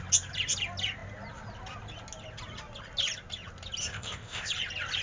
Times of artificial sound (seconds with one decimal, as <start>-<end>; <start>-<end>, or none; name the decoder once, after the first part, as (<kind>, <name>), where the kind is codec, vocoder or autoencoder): 3.8-4.5 (codec, ZipCodec)